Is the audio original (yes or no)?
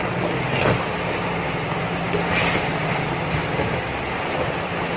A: yes